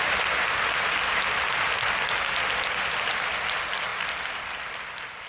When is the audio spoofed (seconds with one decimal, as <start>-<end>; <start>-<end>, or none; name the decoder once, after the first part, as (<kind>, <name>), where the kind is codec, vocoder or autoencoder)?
none